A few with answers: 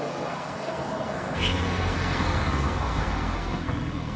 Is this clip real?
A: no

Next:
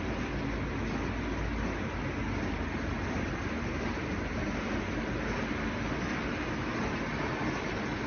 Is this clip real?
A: yes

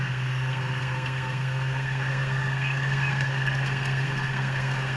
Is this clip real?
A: no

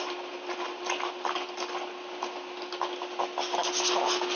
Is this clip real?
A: yes